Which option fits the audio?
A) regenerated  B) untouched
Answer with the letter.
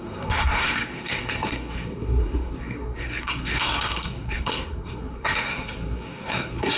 A